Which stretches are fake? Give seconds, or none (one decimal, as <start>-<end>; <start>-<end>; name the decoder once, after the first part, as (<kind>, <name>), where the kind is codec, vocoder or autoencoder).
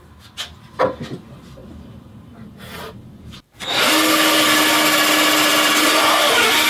none